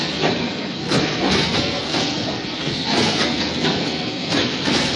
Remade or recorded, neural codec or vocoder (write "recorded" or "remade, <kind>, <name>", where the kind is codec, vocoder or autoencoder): remade, codec, SNAC